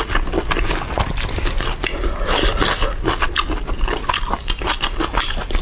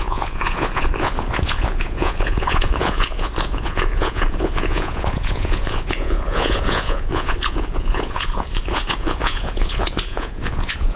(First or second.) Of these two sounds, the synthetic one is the second